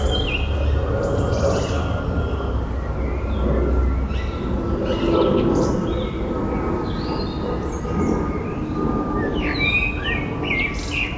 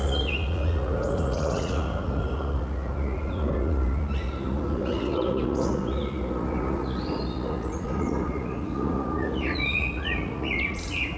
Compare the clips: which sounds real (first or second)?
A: first